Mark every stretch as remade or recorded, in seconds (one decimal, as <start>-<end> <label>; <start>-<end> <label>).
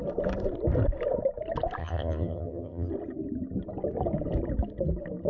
0.0-1.8 recorded; 1.8-2.9 remade; 2.9-5.3 recorded